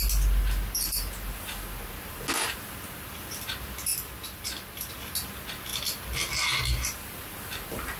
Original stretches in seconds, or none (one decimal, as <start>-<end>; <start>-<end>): 0.0-8.0